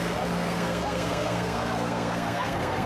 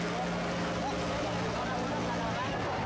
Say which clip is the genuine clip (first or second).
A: second